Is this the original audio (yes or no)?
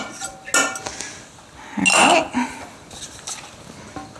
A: yes